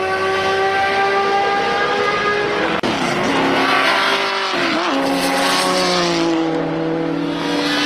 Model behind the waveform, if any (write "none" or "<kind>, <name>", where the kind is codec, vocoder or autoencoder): none